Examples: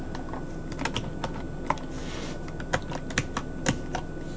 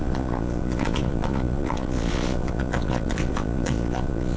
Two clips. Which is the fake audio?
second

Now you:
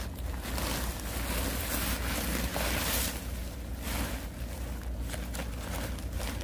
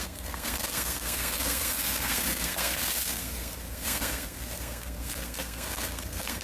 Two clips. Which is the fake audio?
second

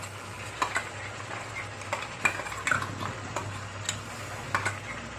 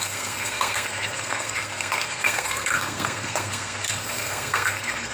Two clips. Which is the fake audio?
second